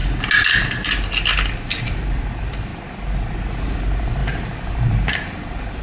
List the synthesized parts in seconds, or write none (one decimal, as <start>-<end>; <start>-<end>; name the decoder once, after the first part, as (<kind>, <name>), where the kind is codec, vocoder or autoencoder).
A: 1.8-2.7 (vocoder, BigVGAN v2); 3.6-5.8